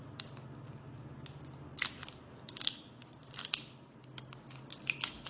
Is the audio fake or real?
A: real